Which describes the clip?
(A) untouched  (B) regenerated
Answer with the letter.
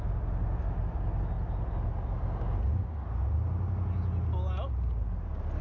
A